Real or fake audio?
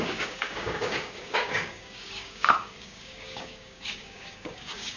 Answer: fake